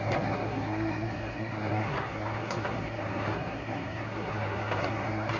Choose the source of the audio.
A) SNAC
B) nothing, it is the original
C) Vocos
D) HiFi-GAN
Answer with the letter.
A